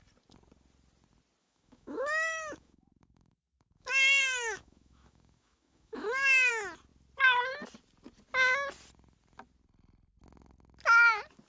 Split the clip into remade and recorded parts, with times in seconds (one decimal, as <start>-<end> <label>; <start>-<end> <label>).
0.0-1.4 recorded; 1.4-6.5 remade; 6.5-11.5 recorded